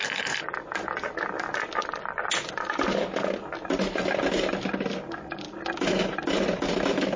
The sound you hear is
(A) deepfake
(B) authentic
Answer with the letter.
B